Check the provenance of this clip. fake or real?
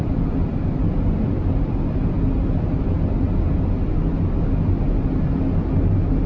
real